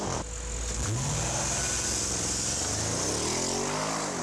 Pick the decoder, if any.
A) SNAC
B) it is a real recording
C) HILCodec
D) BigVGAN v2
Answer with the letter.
B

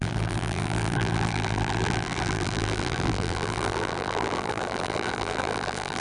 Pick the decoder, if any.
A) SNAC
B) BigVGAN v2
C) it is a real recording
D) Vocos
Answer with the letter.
B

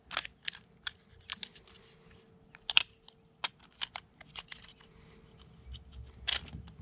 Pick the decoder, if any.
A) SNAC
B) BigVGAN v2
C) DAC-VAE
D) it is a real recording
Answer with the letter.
D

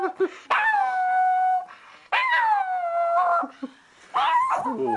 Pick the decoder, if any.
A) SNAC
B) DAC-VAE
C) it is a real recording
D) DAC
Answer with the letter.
C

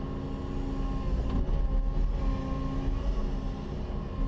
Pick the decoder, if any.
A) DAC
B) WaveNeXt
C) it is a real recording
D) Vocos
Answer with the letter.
C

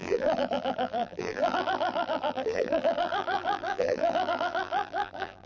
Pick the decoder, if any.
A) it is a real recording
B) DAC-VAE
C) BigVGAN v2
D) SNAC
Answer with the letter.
C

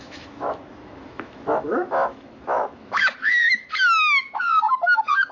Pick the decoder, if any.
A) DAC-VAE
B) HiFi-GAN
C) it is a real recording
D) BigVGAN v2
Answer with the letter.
A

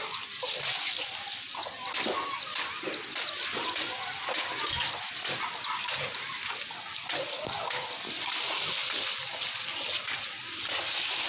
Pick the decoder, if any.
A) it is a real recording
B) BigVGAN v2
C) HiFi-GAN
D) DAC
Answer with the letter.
A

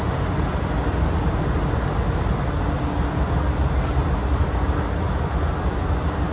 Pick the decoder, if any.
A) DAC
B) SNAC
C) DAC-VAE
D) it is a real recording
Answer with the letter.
D